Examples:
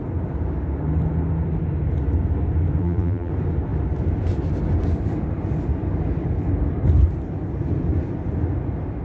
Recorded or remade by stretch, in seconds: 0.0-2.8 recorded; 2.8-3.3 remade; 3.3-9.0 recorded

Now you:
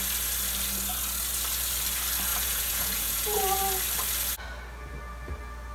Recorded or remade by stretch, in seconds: 0.0-2.3 recorded; 2.3-3.6 remade; 3.6-5.7 recorded